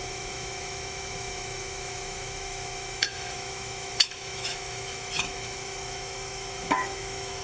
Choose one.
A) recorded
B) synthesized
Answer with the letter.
B